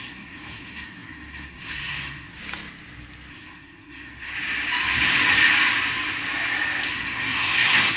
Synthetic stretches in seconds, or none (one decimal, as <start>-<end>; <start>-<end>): 0.0-2.4; 3.3-4.3; 6.9-8.0